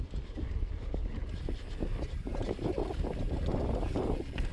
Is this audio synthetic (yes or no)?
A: no